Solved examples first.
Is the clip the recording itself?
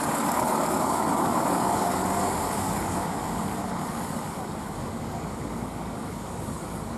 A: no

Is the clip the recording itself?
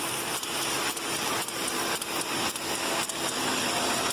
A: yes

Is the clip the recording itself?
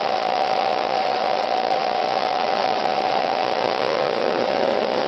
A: no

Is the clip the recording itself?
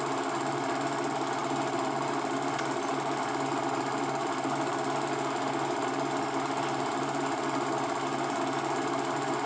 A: yes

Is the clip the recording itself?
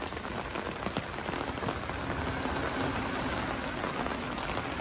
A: yes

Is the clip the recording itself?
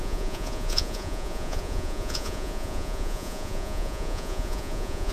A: no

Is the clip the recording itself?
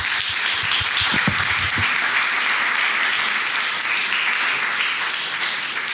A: yes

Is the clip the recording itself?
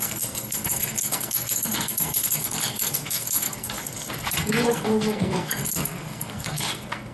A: no